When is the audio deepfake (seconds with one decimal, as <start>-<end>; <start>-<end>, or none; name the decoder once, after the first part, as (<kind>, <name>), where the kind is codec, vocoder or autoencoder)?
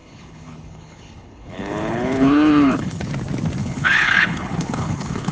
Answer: 0.0-3.1 (codec, HILCodec); 3.6-5.3